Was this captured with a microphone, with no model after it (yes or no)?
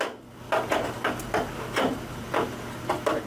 yes